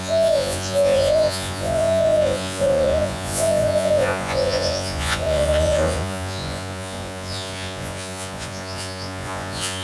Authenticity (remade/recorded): remade